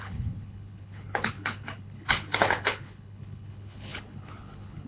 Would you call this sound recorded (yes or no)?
no